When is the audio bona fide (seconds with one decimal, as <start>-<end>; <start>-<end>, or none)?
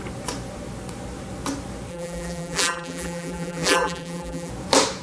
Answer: 0.0-1.9; 4.5-5.0